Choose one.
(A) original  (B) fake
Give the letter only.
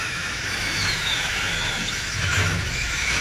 B